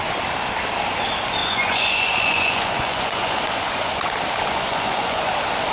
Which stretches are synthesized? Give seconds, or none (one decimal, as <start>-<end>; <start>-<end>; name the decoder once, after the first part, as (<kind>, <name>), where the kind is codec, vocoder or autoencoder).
1.4-4.1 (vocoder, Vocos); 4.5-5.3